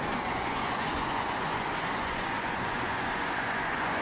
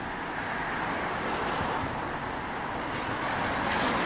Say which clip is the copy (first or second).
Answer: first